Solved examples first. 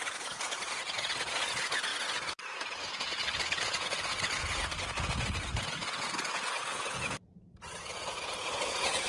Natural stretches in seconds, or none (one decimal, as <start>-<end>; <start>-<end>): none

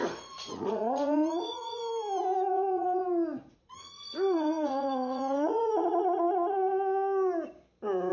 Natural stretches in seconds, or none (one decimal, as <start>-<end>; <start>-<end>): 1.8-2.5; 3.0-3.5; 6.7-8.1

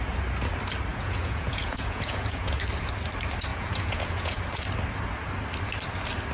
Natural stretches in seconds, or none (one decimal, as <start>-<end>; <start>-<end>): 0.0-0.9; 2.6-3.5; 4.4-6.3

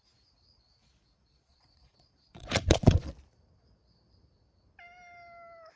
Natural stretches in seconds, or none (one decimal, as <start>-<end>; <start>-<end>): 0.0-0.8; 3.1-5.8